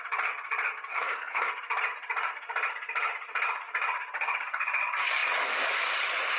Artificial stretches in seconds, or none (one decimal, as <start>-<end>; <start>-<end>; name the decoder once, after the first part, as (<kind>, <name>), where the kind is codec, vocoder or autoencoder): 0.9-1.5 (codec, SNAC)